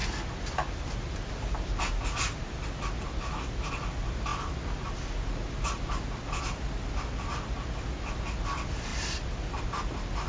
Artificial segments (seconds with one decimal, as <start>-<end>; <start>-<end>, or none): none

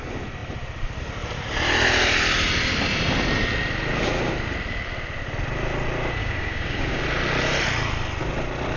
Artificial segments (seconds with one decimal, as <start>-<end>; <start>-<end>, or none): 6.2-7.0

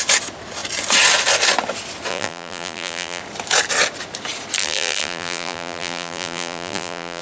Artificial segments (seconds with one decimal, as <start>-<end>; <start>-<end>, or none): 2.1-3.2; 4.6-7.2

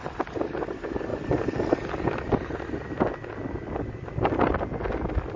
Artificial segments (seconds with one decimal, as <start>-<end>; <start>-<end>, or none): none

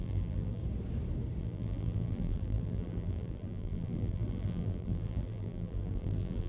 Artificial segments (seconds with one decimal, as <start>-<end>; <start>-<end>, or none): 0.0-0.6; 1.4-6.5